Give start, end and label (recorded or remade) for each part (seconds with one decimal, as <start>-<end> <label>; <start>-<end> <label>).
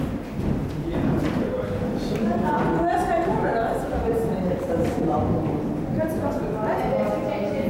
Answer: 0.0-0.6 recorded; 0.6-3.1 remade; 3.1-3.5 recorded; 3.5-4.4 remade; 4.4-7.7 recorded